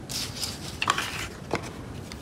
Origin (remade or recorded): remade